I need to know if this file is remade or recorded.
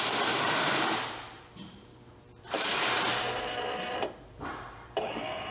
remade